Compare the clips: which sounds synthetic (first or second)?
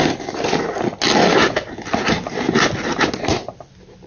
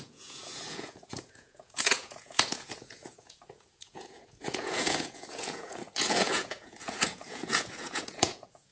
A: second